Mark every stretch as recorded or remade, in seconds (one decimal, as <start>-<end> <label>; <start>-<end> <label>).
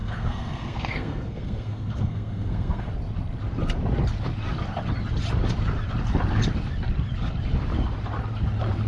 0.0-2.9 remade; 2.9-8.9 recorded